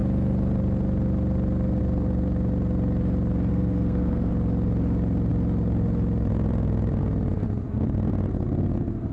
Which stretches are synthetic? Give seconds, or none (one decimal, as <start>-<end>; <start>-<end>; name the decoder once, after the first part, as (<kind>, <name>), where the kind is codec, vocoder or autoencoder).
3.5-4.3 (codec, SNAC)